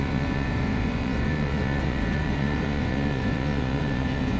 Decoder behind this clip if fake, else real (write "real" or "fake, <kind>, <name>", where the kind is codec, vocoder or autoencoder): fake, vocoder, Vocos